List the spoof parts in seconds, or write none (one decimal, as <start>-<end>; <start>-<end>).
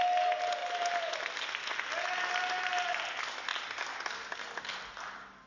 none